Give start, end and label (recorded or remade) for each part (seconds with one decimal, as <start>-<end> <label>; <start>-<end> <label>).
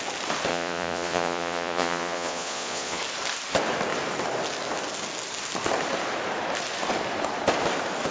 0.0-0.5 recorded; 0.5-3.0 remade; 3.0-8.1 recorded